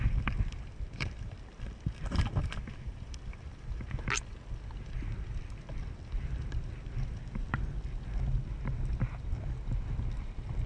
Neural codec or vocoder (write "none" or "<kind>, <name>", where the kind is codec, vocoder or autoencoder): none